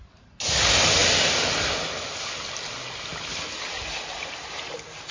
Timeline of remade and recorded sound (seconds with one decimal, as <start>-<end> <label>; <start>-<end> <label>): 0.0-5.1 recorded